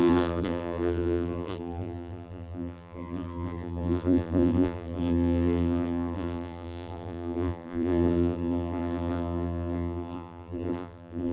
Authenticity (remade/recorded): remade